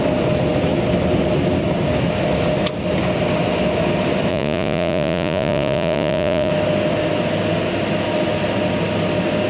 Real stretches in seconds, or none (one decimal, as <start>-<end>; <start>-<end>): 0.0-4.3; 6.5-9.5